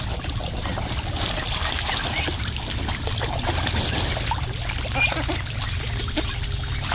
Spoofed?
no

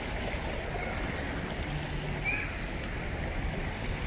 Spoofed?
no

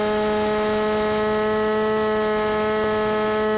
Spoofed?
no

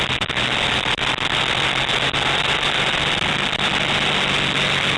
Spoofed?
no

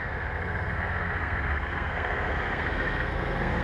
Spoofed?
yes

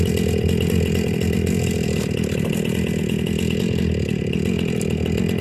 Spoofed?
no